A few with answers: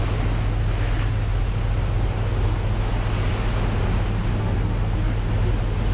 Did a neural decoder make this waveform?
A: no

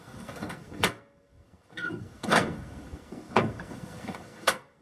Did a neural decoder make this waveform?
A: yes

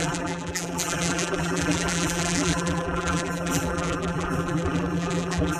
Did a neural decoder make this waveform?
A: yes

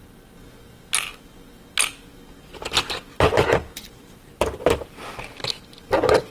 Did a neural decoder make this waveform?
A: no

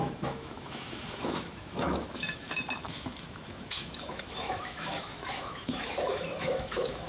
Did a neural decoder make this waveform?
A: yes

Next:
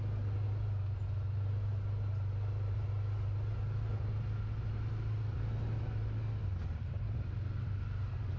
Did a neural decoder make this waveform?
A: no